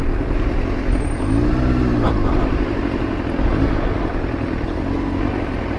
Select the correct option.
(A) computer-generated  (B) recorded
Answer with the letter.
B